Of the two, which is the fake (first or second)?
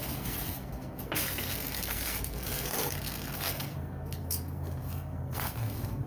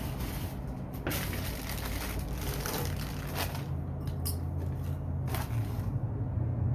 first